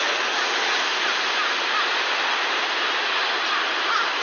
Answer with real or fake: real